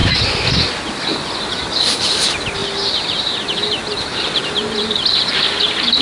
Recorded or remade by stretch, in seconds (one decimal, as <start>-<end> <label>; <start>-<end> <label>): 0.0-6.0 recorded